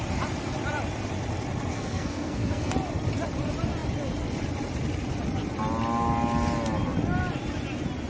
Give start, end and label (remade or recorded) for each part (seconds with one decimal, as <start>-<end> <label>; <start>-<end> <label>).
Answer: 0.0-1.7 recorded; 1.7-2.7 remade; 2.7-8.1 recorded